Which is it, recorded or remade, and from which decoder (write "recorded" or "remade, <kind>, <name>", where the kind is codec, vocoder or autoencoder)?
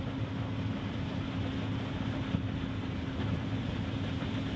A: recorded